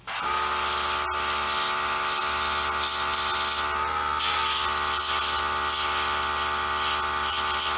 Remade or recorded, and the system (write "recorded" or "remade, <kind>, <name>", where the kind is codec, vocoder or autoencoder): recorded